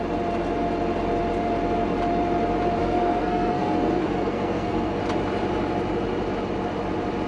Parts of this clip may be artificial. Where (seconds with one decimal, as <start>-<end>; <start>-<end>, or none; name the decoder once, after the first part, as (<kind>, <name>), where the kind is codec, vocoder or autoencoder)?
2.8-5.0 (codec, SNAC)